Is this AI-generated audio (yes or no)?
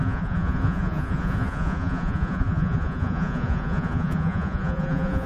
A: yes